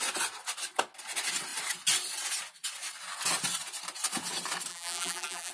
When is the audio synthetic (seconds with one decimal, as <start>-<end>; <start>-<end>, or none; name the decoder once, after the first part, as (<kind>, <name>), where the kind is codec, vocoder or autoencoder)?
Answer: 4.7-5.5 (vocoder, BigVGAN v2)